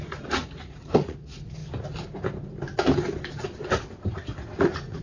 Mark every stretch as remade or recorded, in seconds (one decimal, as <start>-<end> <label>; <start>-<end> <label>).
0.0-1.6 remade; 1.6-4.6 recorded; 4.6-5.0 remade